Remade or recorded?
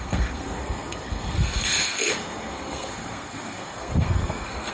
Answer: remade